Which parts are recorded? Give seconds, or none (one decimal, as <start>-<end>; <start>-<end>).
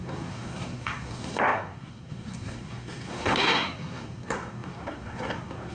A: none